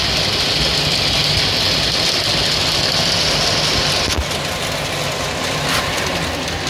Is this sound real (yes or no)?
yes